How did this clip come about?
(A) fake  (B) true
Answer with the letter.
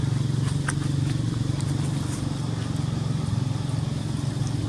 B